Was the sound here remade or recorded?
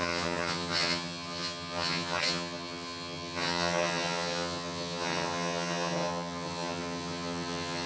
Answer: remade